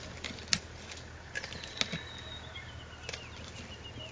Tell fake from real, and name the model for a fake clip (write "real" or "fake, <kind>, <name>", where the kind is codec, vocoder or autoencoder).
real